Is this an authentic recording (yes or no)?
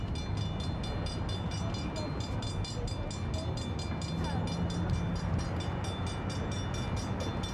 yes